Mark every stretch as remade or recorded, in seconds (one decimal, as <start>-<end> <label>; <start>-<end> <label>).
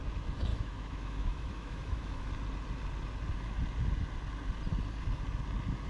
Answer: 0.0-0.5 recorded; 0.5-2.3 remade; 2.3-5.9 recorded